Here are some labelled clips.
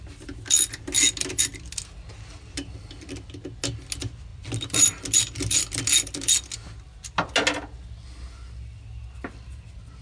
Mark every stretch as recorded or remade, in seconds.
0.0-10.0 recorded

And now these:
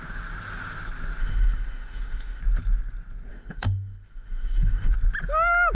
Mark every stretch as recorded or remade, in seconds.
0.0-1.2 recorded; 1.2-2.4 remade; 2.4-3.3 recorded; 3.3-4.9 remade; 4.9-5.7 recorded

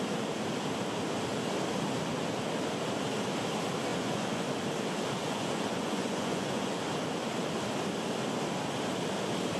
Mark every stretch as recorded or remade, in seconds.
0.0-3.9 recorded; 3.9-4.5 remade; 4.5-5.2 recorded; 5.2-6.8 remade; 6.8-9.6 recorded

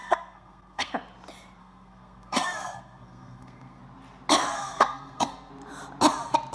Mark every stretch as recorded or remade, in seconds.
0.0-0.9 remade; 0.9-1.6 recorded; 1.6-3.8 remade; 3.8-4.5 recorded; 4.5-5.5 remade; 5.5-6.5 recorded